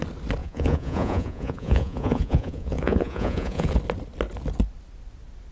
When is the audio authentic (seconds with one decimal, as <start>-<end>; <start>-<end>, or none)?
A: 0.0-0.4; 3.7-5.5